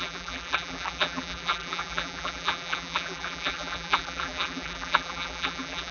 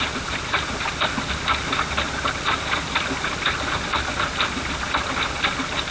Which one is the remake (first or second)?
first